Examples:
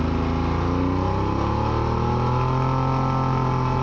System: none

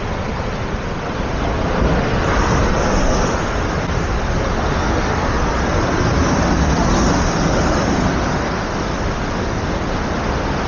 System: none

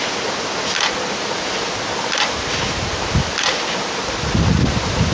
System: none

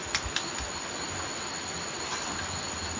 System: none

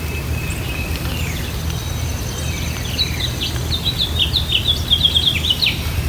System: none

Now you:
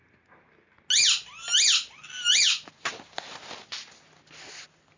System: none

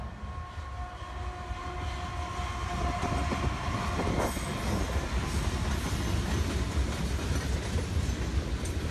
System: none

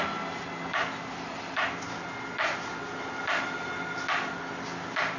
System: none